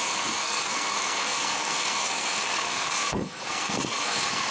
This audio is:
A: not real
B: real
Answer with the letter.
A